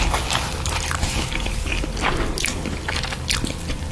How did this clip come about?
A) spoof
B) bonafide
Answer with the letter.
B